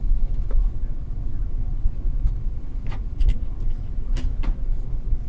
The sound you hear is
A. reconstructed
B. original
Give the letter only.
A